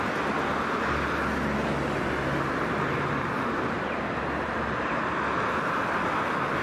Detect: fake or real real